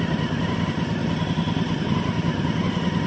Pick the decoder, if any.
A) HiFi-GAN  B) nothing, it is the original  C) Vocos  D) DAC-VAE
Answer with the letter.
B